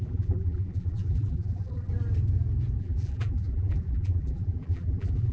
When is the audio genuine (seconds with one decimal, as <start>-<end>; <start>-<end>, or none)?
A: 1.9-2.8